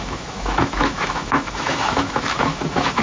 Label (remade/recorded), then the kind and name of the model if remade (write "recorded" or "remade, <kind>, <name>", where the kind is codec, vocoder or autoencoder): remade, autoencoder, DAC-VAE